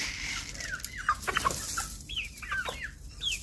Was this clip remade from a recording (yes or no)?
no